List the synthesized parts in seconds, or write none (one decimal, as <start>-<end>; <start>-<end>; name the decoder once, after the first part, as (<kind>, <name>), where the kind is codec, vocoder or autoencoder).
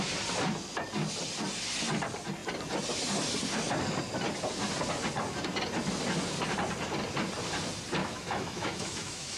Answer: 8.0-9.4 (autoencoder, DAC-VAE)